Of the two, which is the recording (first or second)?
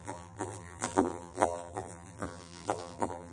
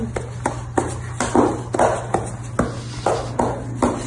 second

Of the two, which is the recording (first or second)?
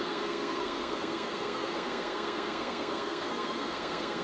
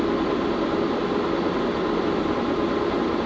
second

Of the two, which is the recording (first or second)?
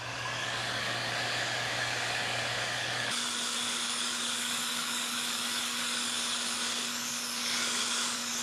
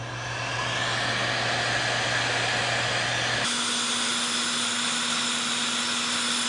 second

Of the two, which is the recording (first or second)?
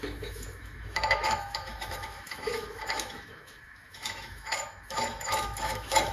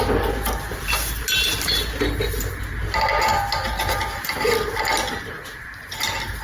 second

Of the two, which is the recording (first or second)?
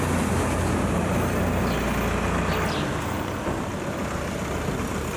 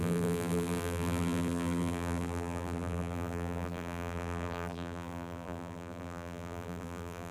first